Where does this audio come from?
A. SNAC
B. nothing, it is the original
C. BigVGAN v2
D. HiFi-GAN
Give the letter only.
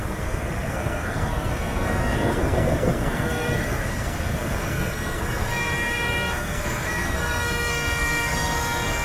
A